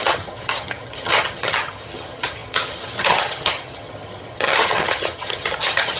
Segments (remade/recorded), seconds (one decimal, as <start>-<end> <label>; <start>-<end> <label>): 0.0-6.0 remade